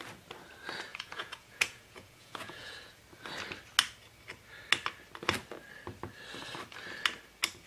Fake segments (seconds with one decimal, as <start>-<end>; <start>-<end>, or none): 0.9-3.0